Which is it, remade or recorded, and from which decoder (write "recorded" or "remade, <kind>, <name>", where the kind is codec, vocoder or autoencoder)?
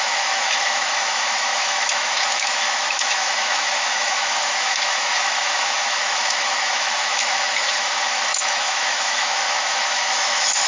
remade, autoencoder, DAC-VAE